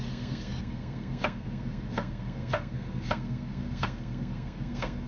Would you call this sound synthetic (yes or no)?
yes